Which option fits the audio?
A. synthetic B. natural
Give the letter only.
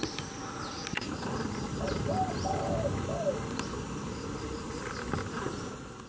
B